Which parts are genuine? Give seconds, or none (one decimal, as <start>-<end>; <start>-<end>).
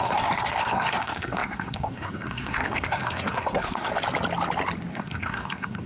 3.9-4.9